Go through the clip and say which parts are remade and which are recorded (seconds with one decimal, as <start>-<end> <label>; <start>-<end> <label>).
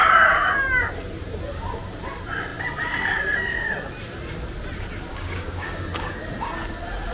0.0-5.1 recorded; 5.1-6.1 remade; 6.1-7.1 recorded